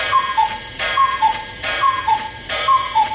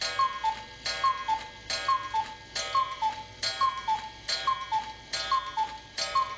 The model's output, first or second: first